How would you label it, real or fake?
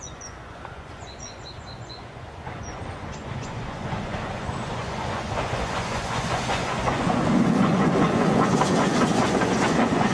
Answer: fake